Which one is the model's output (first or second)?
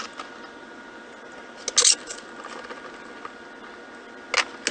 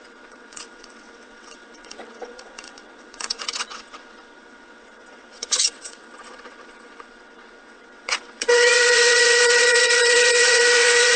second